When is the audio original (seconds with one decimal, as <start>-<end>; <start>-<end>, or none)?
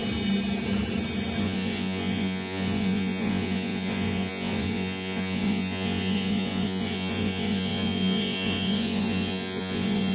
0.0-1.4